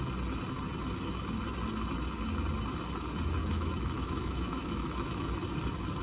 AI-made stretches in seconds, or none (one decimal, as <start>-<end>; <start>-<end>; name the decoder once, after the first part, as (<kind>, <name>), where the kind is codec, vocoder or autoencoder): 3.4-5.3 (autoencoder, DAC-VAE)